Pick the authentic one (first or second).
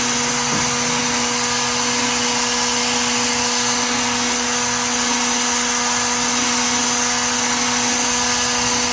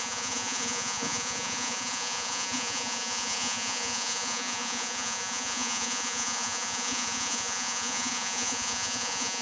first